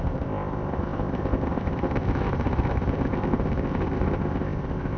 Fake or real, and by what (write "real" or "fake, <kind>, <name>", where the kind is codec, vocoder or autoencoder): fake, codec, ZipCodec